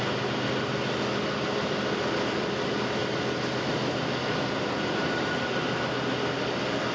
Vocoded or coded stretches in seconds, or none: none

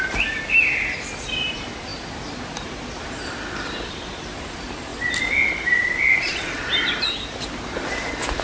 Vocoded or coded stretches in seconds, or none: none

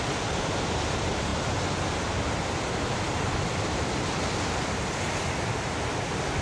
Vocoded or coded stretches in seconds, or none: none

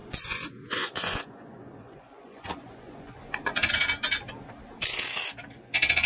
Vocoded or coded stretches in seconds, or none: 0.0-3.7 (vocoder, Vocos)

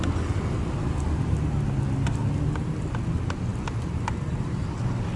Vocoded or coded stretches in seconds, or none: none